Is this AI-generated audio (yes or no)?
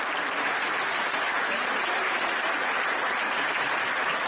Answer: no